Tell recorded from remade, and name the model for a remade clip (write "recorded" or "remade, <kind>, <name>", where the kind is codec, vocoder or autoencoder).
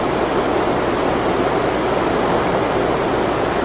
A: recorded